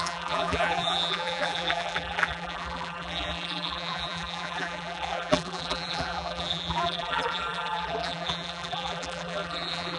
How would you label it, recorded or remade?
remade